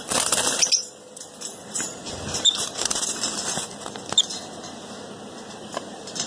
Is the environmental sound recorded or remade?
recorded